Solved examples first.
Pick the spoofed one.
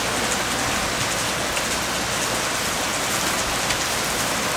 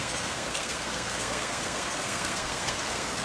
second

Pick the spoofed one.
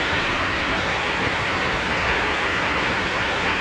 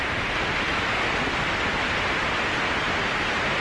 first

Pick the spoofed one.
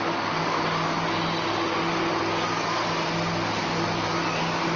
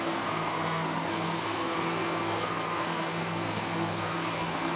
second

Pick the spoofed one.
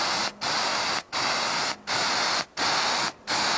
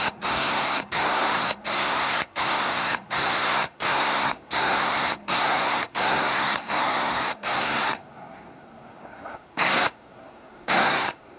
second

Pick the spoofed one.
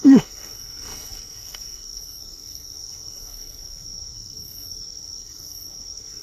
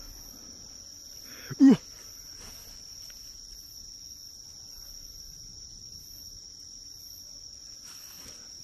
first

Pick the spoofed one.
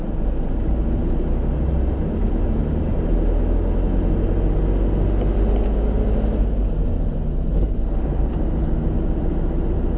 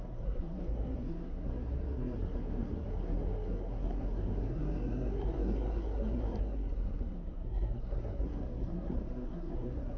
second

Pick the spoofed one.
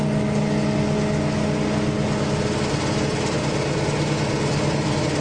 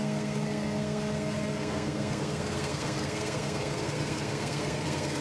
second